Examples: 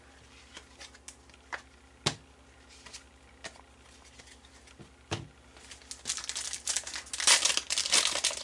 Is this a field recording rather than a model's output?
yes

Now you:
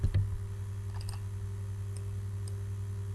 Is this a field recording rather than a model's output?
yes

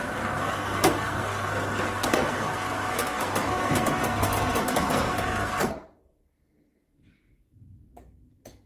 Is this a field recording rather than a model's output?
no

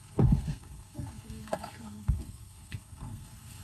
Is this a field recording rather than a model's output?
no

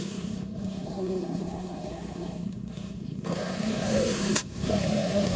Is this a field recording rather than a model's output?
no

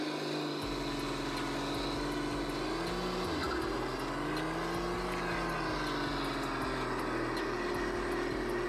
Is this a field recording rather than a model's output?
yes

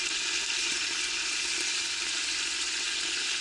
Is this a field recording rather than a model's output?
yes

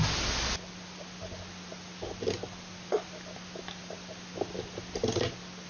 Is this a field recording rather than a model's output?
yes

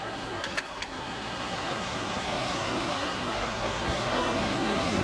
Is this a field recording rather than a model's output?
no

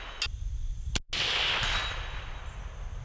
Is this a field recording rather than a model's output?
yes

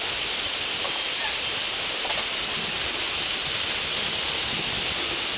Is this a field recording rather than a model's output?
yes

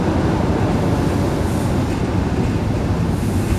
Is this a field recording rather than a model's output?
yes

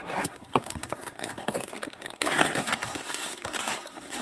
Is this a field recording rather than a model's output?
no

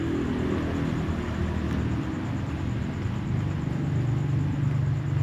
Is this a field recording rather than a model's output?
yes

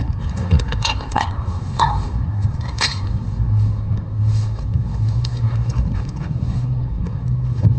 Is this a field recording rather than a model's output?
no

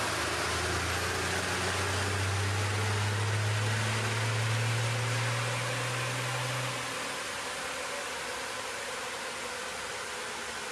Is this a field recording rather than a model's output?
yes